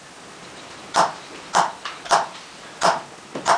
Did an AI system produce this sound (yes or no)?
no